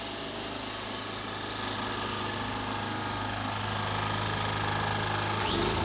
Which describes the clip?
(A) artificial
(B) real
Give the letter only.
B